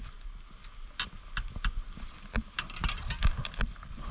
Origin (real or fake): real